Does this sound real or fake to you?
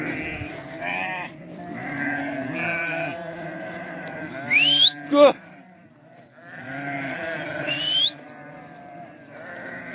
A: fake